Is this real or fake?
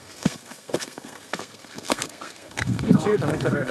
fake